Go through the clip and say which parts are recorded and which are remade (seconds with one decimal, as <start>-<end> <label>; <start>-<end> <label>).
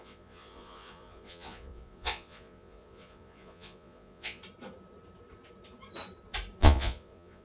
0.0-4.4 remade; 4.4-6.6 recorded; 6.6-7.4 remade